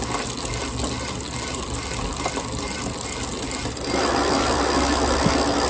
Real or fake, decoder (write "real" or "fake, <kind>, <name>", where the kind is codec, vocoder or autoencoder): real